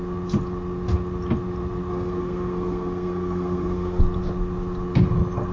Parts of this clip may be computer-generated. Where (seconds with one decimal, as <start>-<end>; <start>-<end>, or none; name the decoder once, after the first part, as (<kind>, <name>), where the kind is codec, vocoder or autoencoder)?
1.9-4.0 (codec, SNAC)